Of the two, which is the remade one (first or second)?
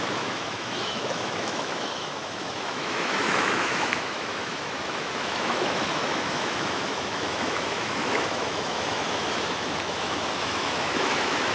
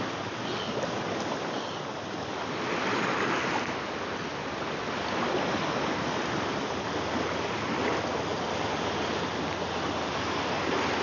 first